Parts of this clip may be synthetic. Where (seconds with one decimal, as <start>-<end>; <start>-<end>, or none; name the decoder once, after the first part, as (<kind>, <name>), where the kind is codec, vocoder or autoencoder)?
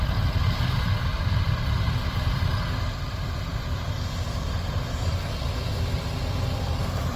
0.0-7.2 (vocoder, BigVGAN v2)